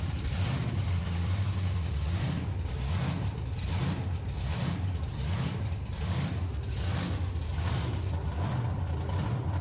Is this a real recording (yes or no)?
no